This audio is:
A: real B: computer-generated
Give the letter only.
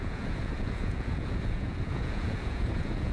B